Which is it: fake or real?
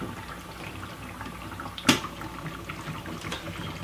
real